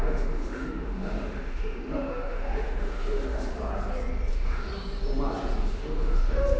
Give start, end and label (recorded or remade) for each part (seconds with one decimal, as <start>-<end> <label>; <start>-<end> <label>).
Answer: 0.0-3.6 remade; 3.6-4.3 recorded; 4.3-4.7 remade; 4.7-5.6 recorded; 5.6-6.6 remade